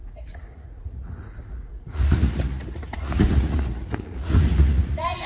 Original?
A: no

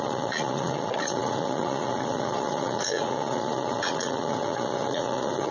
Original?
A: no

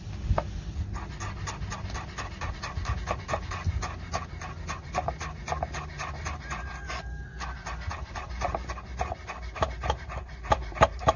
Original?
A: yes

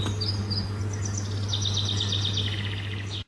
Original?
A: yes